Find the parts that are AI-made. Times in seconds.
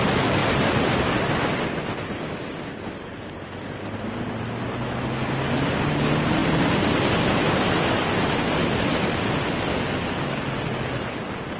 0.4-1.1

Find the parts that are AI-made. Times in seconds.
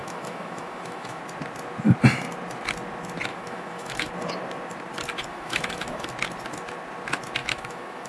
0.0-1.2; 3.3-4.1; 5.3-6.1; 7.4-8.1